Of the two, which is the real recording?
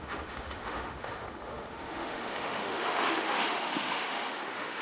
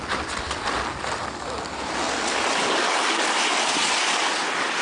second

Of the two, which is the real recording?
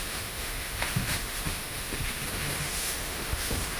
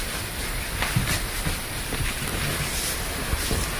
second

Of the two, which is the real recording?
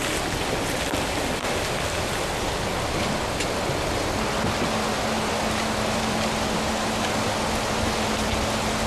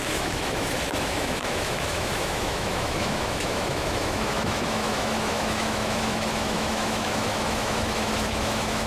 first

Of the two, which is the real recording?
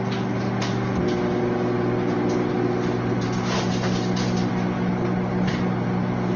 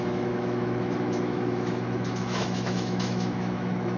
first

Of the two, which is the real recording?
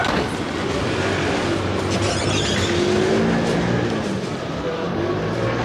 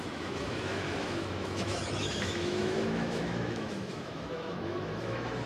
first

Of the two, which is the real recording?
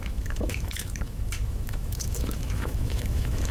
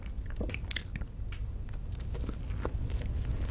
second